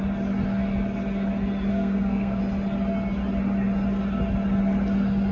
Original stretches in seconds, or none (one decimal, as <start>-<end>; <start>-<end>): 0.0-1.7; 2.4-5.3